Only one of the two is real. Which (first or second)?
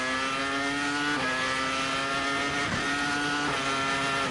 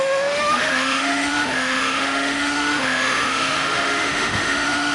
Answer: first